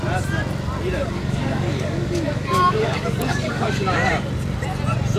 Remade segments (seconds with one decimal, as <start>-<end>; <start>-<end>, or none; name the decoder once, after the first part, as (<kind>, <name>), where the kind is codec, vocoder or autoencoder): 1.0-4.1 (codec, DAC)